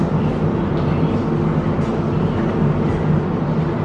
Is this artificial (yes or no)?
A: no